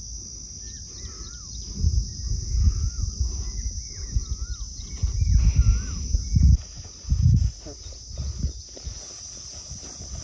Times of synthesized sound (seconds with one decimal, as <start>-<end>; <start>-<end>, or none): none